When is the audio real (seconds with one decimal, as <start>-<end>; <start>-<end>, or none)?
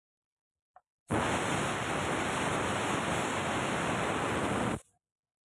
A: 0.0-5.5